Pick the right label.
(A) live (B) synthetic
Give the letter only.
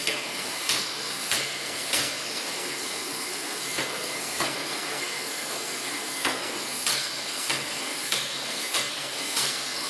B